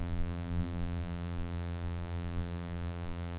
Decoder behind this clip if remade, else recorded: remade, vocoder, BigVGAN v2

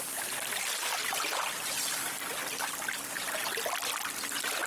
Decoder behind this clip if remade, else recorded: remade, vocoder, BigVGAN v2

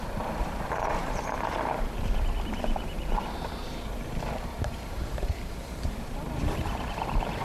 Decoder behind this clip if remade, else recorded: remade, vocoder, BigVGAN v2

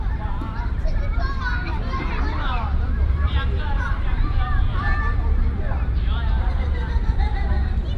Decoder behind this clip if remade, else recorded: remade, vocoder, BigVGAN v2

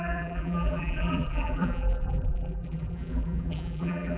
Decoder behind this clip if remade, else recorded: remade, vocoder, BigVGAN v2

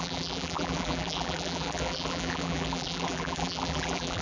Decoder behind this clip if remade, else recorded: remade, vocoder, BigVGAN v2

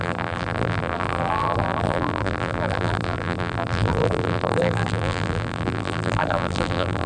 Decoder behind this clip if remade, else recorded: remade, vocoder, BigVGAN v2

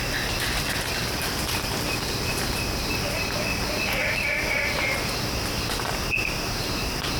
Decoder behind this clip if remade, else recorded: recorded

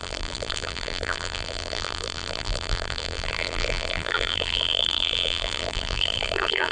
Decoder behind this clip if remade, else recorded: remade, vocoder, BigVGAN v2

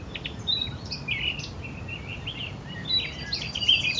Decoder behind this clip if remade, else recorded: remade, vocoder, BigVGAN v2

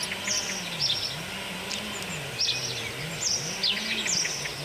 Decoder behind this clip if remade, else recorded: recorded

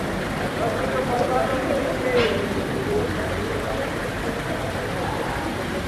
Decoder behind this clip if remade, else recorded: remade, vocoder, BigVGAN v2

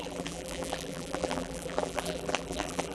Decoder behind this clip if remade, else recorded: remade, vocoder, BigVGAN v2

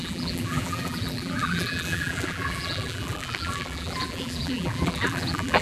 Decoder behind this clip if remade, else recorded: remade, vocoder, BigVGAN v2